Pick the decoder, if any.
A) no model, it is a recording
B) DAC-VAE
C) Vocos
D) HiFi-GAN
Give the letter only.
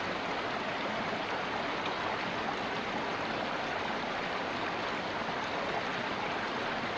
A